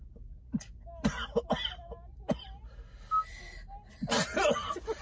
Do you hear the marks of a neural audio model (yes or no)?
no